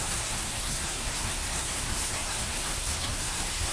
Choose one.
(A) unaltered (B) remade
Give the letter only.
B